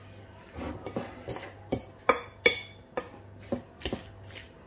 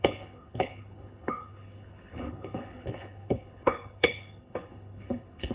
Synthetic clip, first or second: second